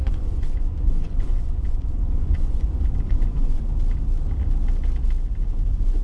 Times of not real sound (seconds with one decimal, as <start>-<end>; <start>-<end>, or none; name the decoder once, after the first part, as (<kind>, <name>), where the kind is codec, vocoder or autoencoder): 0.0-3.6 (vocoder, Vocos)